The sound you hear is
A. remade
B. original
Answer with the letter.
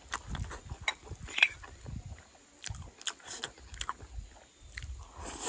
B